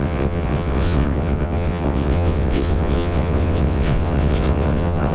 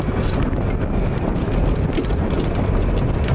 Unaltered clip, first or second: second